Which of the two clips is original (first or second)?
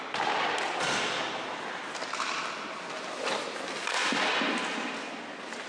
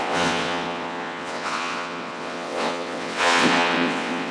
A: first